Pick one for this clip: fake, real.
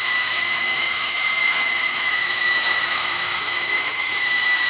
fake